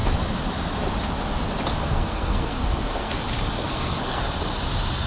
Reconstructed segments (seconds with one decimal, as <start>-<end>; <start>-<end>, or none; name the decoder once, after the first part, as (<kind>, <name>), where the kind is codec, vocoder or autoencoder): 1.8-3.2 (codec, SNAC); 3.6-4.2